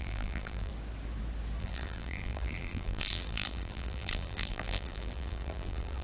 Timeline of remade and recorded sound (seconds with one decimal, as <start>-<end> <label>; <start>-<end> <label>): 0.0-0.7 remade; 0.7-1.6 recorded; 1.6-6.0 remade